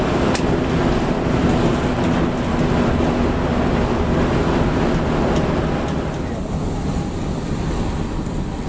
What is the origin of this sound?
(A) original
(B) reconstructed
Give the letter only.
A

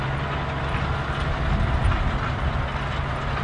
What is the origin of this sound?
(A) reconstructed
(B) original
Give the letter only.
B